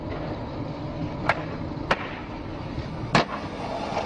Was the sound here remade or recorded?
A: recorded